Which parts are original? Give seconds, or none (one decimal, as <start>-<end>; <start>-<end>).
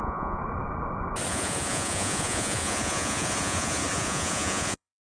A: 0.4-1.3